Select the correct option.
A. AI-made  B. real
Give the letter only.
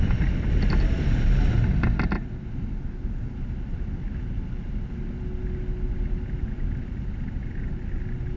B